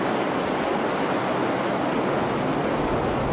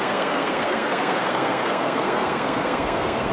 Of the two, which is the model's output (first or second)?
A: second